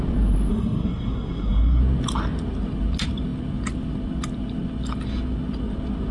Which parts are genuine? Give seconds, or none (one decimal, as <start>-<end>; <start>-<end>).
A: 0.0-0.5; 1.8-6.1